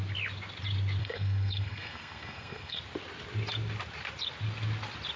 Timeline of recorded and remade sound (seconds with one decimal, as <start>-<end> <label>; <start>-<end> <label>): 0.0-1.0 recorded; 1.0-2.8 remade; 2.8-5.2 recorded